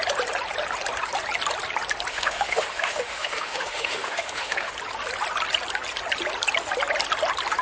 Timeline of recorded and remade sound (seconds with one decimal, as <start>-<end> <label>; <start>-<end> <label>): 0.0-2.1 recorded; 2.1-4.7 remade; 4.7-7.6 recorded